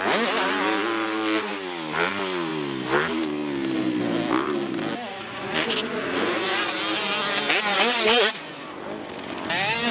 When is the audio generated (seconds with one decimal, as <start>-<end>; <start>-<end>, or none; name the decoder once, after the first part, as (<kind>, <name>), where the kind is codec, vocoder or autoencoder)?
5.1-6.8 (vocoder, Vocos); 7.7-8.6